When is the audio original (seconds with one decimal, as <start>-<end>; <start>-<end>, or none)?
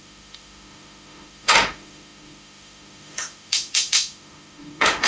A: none